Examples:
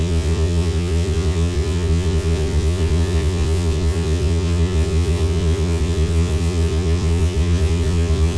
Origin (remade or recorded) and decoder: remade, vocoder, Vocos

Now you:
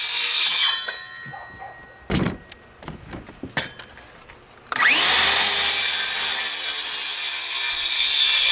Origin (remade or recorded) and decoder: recorded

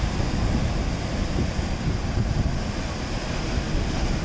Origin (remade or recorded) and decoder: recorded